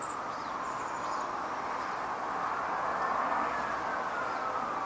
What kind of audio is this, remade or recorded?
recorded